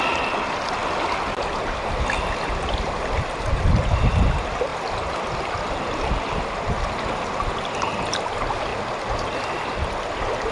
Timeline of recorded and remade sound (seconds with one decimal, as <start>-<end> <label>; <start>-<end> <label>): 0.0-10.5 recorded